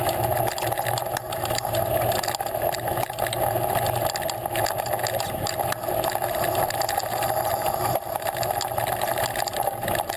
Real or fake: real